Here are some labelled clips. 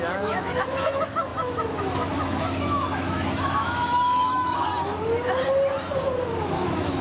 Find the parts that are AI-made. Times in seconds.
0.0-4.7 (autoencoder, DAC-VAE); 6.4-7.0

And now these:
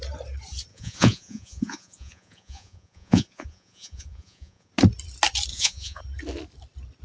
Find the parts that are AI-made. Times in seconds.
0.7-4.7 (vocoder, Vocos); 5.5-6.0

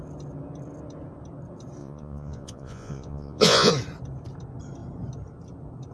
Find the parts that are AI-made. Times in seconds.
1.8-3.7 (vocoder, Vocos)

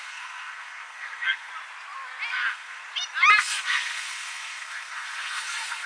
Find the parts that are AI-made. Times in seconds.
0.0-1.5 (codec, SNAC); 2.3-2.8; 3.4-5.9

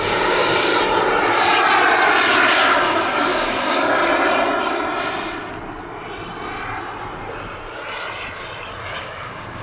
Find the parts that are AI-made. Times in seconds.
0.0-0.7 (codec, DAC); 2.3-4.0; 8.9-9.6

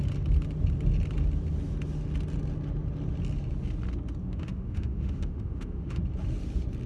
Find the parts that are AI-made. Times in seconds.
4.2-6.0 (autoencoder, DAC-VAE)